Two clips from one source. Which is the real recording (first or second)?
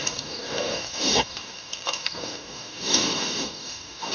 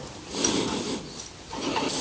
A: second